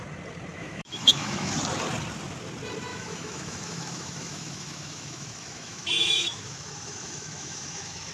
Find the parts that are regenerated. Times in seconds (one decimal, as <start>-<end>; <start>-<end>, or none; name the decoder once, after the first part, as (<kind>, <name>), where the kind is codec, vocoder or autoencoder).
0.5-1.5 (autoencoder, DAC-VAE); 2.9-8.1